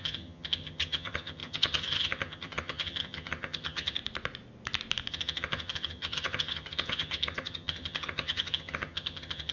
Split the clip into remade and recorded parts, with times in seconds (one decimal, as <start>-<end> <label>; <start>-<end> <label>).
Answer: 0.0-4.0 remade; 4.0-5.1 recorded; 5.1-9.5 remade